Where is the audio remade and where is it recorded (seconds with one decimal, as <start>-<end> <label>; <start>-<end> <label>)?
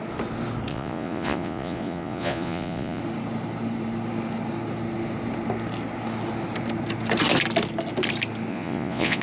0.0-0.7 recorded; 0.7-3.0 remade; 3.0-8.5 recorded; 8.5-9.2 remade